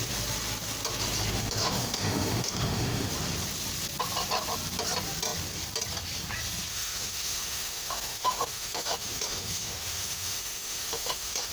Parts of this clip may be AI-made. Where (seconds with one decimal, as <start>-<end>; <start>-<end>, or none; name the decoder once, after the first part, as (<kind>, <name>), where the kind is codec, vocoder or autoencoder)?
1.4-3.1 (autoencoder, DAC-VAE); 6.7-11.5